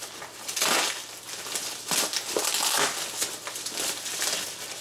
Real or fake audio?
real